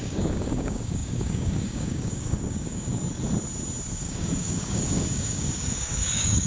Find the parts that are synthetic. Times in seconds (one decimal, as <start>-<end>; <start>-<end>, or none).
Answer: 0.0-3.0; 3.9-6.5